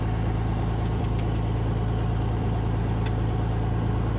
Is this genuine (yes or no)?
yes